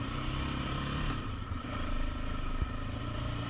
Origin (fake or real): fake